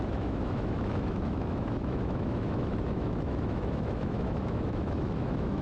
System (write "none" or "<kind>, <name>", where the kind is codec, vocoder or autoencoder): autoencoder, DAC-VAE